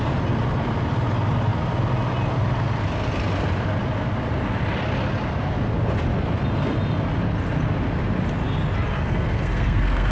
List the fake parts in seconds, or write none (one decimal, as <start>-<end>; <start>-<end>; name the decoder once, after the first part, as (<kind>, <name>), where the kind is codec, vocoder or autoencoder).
8.9-10.1 (codec, SNAC)

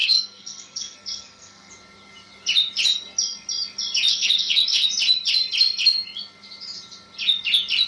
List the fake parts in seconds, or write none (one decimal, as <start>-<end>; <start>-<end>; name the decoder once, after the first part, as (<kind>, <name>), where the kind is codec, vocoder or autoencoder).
0.0-1.7 (codec, SNAC); 4.1-4.9

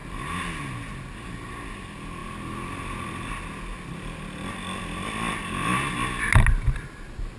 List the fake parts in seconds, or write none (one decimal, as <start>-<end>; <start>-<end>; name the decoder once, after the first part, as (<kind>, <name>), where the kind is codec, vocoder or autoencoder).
none

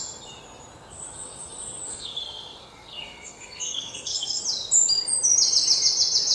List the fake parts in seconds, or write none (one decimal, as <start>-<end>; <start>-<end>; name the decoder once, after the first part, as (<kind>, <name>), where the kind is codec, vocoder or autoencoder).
1.9-4.4 (codec, SNAC)

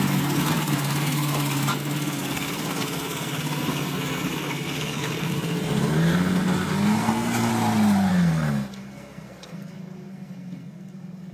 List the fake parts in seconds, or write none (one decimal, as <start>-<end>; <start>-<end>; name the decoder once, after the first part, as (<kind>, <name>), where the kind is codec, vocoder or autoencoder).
0.0-7.5 (codec, SNAC); 8.1-11.3

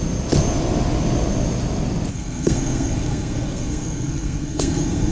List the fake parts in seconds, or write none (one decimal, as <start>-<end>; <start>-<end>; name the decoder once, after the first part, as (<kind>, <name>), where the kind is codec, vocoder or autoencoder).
2.1-5.1 (codec, SNAC)

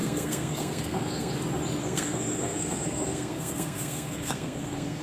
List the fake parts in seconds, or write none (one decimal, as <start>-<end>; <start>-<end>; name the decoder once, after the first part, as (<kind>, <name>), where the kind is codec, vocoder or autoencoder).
0.0-1.3 (codec, SNAC); 1.8-5.0

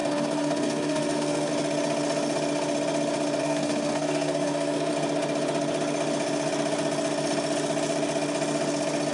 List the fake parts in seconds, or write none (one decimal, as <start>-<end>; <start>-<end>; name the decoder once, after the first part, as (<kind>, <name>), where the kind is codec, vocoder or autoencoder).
0.0-1.5 (codec, SNAC); 3.4-4.9